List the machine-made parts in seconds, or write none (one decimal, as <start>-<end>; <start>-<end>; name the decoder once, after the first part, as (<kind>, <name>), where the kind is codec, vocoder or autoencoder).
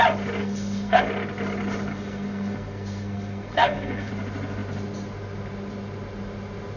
0.4-1.0 (codec, SNAC); 1.9-4.1